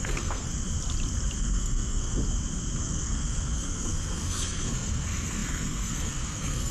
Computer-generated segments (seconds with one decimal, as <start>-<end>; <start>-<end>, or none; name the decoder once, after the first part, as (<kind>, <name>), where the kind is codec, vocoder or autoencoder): 0.0-0.5 (codec, SNAC); 1.4-2.2; 2.8-6.7